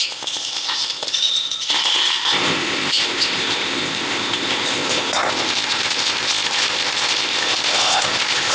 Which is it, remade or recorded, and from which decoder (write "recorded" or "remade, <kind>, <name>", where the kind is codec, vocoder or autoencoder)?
remade, codec, ZipCodec